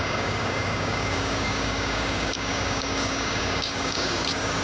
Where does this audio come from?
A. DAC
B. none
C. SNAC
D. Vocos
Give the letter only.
A